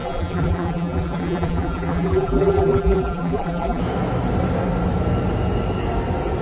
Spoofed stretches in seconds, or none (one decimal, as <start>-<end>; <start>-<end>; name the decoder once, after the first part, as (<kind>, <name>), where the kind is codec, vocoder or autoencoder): 0.0-3.8 (vocoder, BigVGAN v2)